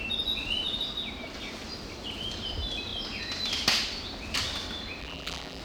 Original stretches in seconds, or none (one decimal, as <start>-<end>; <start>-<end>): 0.0-5.0